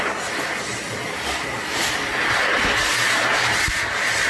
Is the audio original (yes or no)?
yes